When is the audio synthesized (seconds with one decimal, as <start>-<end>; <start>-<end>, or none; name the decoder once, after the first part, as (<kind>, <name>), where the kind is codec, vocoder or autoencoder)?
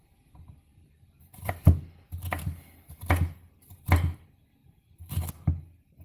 none